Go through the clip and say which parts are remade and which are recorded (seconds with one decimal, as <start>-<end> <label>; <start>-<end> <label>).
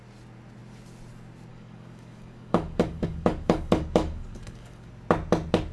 0.0-1.5 recorded; 1.5-4.9 remade; 4.9-5.7 recorded